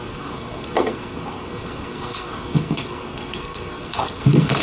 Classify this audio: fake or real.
fake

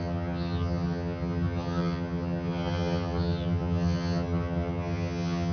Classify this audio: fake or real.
fake